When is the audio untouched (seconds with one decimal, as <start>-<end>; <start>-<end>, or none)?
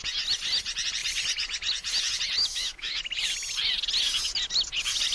0.0-2.4; 3.0-5.1